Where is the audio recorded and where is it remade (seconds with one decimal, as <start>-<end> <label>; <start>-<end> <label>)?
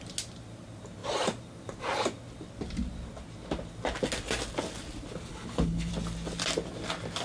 0.0-5.3 recorded; 5.3-5.9 remade; 5.9-7.2 recorded